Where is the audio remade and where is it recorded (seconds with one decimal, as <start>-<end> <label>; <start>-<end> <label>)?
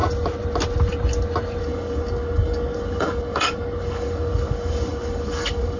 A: 0.0-1.6 recorded; 1.6-5.8 remade